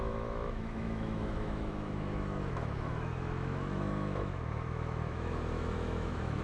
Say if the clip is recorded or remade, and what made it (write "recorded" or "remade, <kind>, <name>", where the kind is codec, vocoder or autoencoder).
remade, autoencoder, DAC-VAE